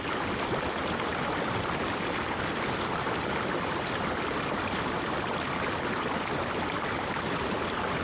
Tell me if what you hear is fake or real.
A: real